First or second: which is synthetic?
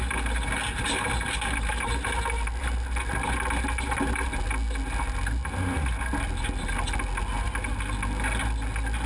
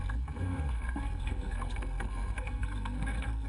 second